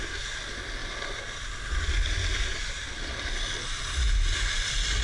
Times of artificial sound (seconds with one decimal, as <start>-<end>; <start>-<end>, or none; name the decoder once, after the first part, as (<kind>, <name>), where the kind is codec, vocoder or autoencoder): none